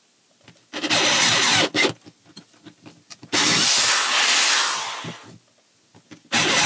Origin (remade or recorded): recorded